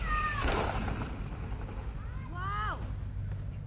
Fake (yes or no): no